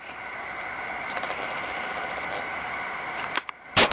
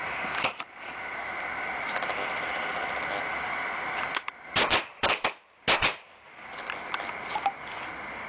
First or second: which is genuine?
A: second